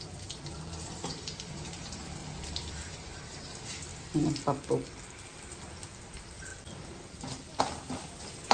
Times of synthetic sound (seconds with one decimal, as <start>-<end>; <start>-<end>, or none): 0.0-2.2; 2.7-3.9; 6.0-6.5; 7.6-8.5